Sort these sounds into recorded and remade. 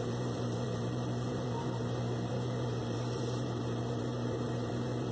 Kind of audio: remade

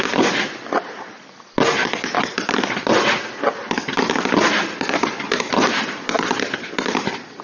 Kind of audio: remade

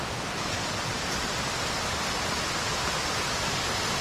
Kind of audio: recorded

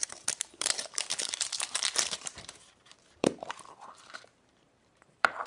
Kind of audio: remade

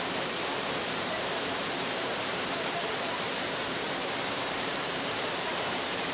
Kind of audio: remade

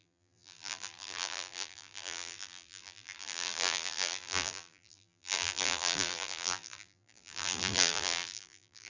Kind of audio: remade